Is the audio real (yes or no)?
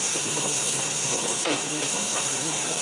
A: no